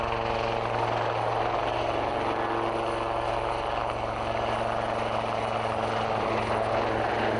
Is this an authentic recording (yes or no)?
yes